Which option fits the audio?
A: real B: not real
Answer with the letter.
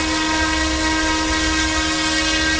A